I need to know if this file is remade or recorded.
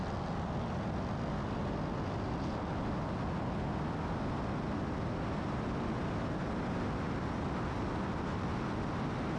recorded